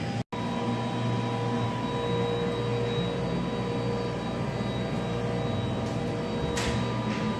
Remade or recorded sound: recorded